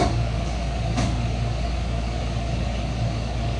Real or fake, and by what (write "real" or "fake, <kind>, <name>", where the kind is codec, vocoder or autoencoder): fake, codec, DAC